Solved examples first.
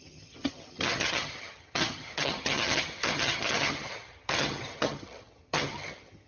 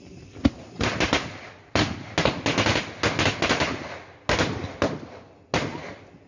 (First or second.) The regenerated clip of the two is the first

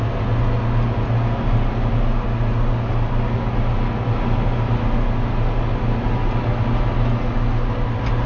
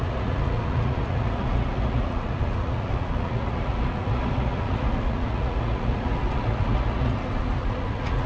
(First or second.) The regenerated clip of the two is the second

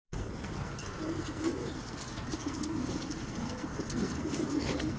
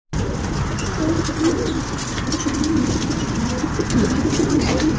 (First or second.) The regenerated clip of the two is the first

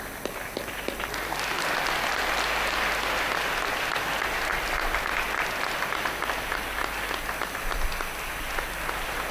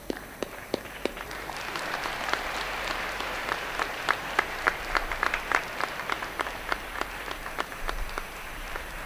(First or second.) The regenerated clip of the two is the second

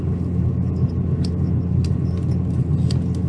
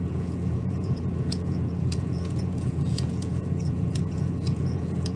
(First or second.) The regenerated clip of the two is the second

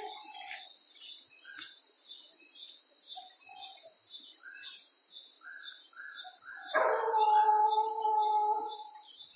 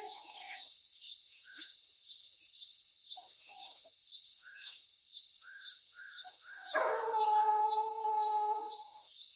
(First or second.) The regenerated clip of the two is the second